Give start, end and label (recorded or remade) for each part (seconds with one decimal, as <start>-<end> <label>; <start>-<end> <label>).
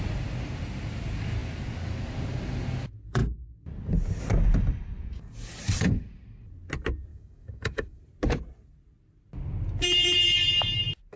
0.0-7.1 recorded; 7.1-8.0 remade; 8.0-11.2 recorded